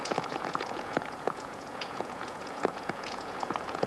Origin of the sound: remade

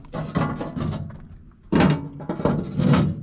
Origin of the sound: recorded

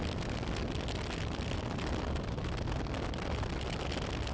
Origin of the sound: recorded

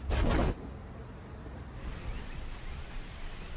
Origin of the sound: recorded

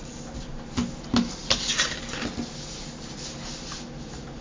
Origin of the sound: recorded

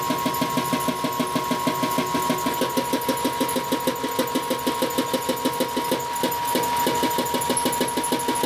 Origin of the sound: recorded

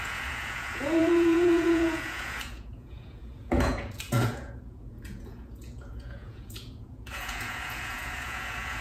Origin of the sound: remade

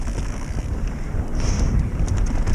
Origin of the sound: recorded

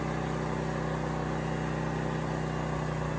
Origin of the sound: recorded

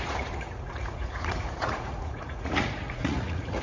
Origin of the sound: remade